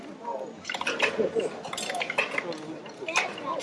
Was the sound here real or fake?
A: real